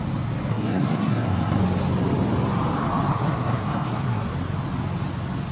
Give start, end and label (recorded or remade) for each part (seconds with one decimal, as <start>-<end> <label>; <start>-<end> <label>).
0.0-0.5 recorded; 0.5-1.6 remade; 1.6-3.1 recorded; 3.1-4.3 remade; 4.3-5.5 recorded

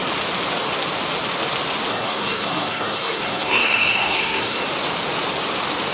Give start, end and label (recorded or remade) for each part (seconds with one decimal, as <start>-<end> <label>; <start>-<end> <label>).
0.0-1.9 recorded; 1.9-4.6 remade; 4.6-5.9 recorded

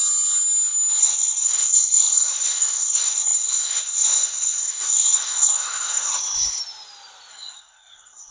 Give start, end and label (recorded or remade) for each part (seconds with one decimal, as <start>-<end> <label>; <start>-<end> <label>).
0.0-1.0 recorded; 1.0-6.6 remade; 6.6-7.3 recorded; 7.3-8.3 remade

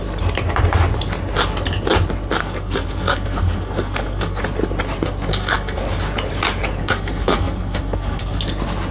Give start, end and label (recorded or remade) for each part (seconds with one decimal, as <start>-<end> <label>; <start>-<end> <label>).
0.0-2.4 recorded; 2.4-4.4 remade; 4.4-5.3 recorded; 5.3-5.8 remade; 5.8-6.8 recorded; 6.8-8.4 remade; 8.4-8.9 recorded

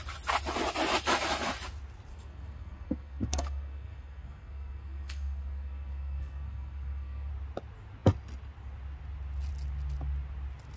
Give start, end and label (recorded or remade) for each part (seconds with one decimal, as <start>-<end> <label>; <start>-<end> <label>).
0.0-2.1 recorded; 2.1-7.3 remade; 7.3-10.8 recorded